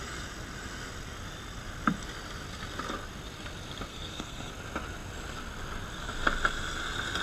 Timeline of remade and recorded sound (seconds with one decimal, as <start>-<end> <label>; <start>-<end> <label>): 0.0-3.9 recorded; 3.9-4.5 remade; 4.5-7.2 recorded